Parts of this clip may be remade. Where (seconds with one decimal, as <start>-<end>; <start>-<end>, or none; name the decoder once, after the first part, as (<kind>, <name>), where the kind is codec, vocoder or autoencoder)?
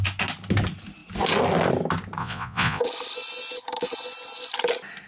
2.2-2.8 (vocoder, Vocos)